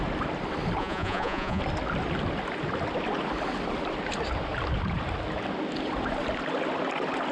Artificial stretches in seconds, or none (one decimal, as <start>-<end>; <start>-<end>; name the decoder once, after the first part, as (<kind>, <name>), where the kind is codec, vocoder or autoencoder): 0.8-1.6 (vocoder, Vocos)